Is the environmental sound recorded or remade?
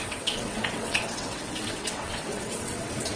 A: remade